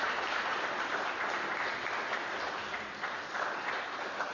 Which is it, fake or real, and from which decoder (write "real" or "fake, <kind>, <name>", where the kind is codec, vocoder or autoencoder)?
real